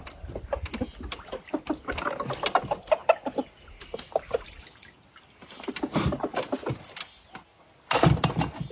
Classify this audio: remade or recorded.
recorded